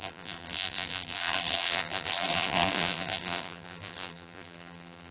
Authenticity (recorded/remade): remade